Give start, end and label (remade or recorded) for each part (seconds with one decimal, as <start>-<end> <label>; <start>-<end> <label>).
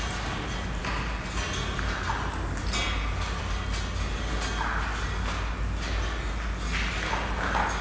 0.0-7.8 recorded